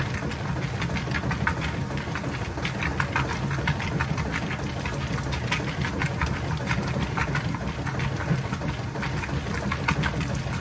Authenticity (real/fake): real